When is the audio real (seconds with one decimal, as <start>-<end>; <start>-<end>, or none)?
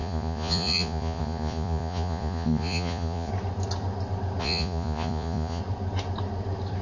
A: 3.3-4.4; 5.6-6.8